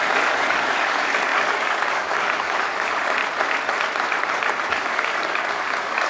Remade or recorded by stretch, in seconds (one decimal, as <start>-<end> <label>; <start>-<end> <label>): 0.0-3.2 remade; 3.2-4.7 recorded; 4.7-6.1 remade